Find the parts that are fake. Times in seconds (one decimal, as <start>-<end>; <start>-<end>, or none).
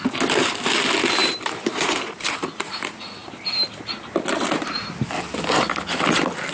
1.2-2.8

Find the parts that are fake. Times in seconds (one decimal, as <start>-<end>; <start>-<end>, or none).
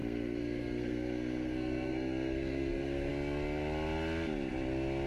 0.0-3.1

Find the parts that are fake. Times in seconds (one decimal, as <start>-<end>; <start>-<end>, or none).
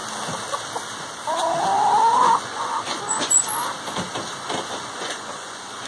2.1-3.5; 4.7-5.9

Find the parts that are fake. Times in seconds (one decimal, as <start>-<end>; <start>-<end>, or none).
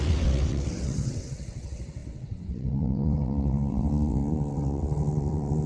0.0-5.7